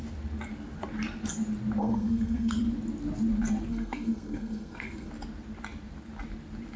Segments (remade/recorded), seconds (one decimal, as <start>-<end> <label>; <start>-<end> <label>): 0.0-1.8 recorded; 1.8-2.6 remade; 2.6-3.7 recorded; 3.7-5.1 remade; 5.1-6.8 recorded